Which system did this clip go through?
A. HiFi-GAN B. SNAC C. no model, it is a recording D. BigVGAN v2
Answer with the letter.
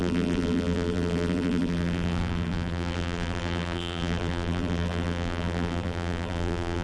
D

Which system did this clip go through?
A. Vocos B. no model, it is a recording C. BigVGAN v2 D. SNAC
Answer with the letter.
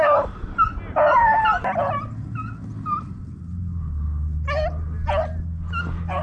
B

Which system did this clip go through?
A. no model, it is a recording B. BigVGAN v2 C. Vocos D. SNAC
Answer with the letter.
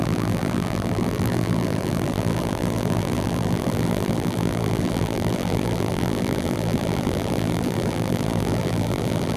B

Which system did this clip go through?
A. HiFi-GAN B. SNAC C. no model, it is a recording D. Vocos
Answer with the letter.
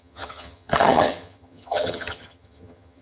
A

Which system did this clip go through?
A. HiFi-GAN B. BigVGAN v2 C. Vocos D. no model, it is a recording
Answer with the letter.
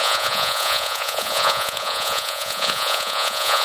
C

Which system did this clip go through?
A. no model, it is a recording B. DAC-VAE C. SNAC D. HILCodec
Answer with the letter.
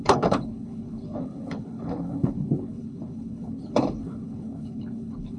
D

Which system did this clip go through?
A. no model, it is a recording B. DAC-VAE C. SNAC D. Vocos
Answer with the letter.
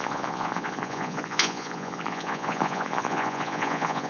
D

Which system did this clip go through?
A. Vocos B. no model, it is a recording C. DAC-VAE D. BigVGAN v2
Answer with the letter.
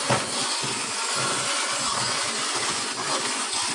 A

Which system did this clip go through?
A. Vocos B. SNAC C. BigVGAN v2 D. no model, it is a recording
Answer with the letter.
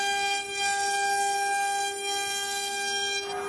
D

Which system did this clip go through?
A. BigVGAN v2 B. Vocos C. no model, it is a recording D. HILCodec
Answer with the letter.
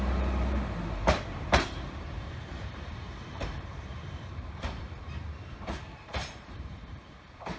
A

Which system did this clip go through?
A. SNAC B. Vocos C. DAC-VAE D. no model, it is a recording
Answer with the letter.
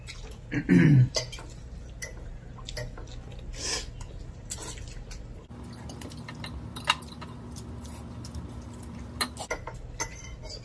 D